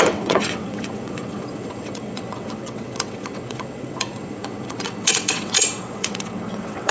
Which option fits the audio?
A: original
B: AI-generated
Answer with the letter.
B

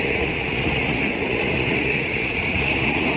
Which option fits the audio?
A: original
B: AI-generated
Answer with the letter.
B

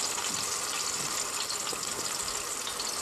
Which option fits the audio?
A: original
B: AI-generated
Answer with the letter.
A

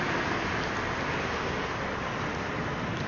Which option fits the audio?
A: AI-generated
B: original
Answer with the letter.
B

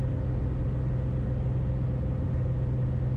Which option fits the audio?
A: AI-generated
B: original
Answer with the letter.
B